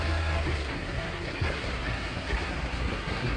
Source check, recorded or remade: remade